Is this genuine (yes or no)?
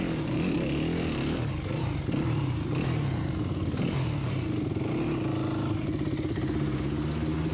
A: yes